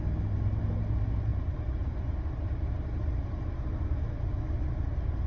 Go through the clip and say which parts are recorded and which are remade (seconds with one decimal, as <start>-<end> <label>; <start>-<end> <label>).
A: 0.0-1.3 recorded; 1.3-3.3 remade; 3.3-5.3 recorded